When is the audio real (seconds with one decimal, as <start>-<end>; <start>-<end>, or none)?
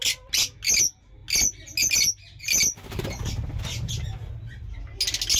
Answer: 0.0-5.4